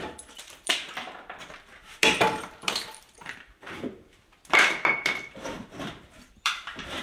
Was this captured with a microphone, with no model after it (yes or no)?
no